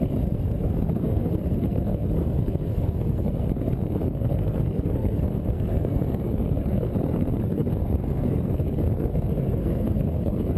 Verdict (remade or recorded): remade